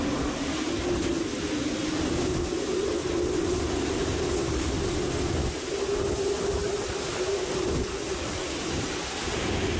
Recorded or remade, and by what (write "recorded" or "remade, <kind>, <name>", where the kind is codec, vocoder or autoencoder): recorded